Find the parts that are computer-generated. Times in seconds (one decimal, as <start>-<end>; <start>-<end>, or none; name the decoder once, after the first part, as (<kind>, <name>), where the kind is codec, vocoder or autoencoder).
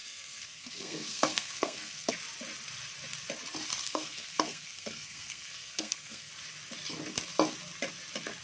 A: 0.0-2.1 (codec, SNAC); 3.8-6.3